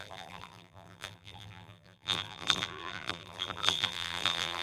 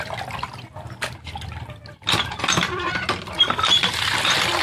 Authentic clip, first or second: second